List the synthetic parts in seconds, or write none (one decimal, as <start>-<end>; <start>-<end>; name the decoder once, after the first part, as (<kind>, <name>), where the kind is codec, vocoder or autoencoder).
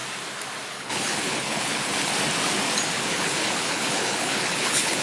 0.7-2.1 (codec, HILCodec); 3.1-5.0